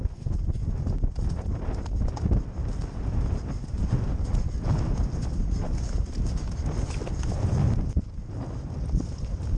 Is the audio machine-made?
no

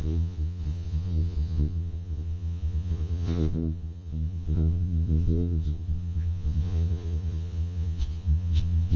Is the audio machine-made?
yes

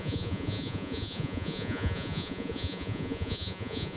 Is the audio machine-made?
yes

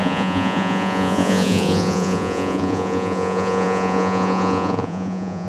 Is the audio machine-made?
yes